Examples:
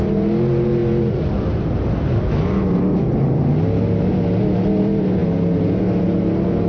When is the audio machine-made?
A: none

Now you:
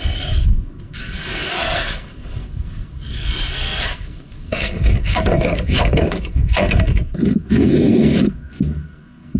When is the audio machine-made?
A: 0.0-9.4 (codec, SNAC)

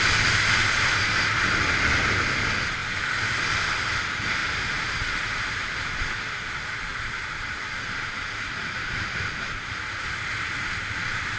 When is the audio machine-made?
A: 4.4-6.2 (vocoder, BigVGAN v2); 6.9-11.0

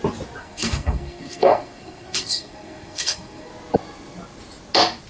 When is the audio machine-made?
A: 0.4-3.5 (codec, SNAC)

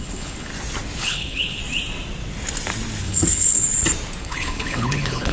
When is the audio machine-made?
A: 0.0-0.5 (codec, HILCodec); 1.0-1.6; 3.0-3.6; 4.2-5.3

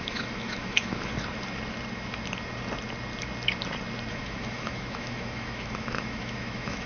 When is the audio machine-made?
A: 0.0-1.1 (autoencoder, DAC-VAE); 4.1-6.9